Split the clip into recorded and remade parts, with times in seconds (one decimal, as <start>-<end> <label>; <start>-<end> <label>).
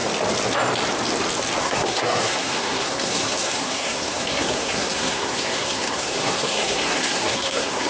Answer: 0.0-1.6 recorded; 1.6-7.9 remade